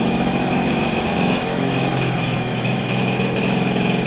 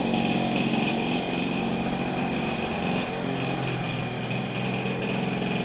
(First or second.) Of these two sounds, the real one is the second